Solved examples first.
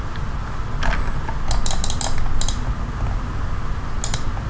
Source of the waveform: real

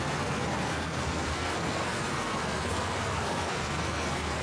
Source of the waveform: fake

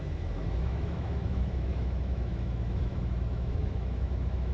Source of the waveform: fake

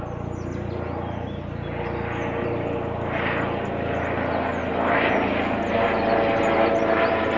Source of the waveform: real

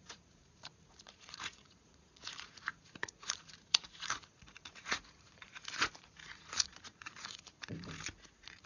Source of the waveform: fake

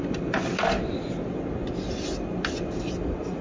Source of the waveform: real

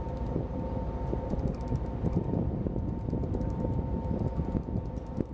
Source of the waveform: real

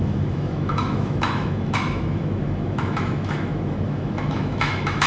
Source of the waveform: fake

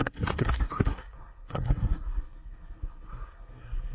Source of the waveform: fake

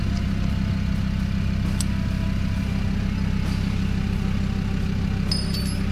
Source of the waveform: real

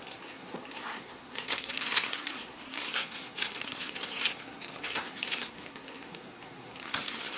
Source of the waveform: fake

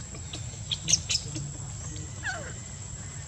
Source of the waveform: real